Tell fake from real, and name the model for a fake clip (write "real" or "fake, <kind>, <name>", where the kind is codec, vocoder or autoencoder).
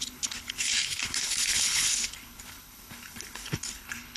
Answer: fake, codec, HILCodec